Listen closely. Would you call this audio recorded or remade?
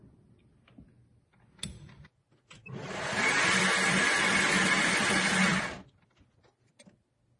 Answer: recorded